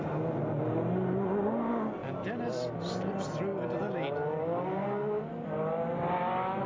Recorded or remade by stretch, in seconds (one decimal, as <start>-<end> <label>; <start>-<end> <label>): 0.0-6.7 recorded